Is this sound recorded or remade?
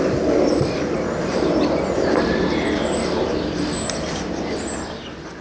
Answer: recorded